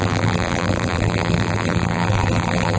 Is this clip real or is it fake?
fake